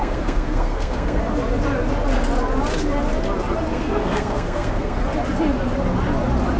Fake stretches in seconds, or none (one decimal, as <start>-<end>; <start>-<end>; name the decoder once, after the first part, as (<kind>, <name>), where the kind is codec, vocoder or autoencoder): 0.0-1.2 (codec, SNAC); 3.7-5.0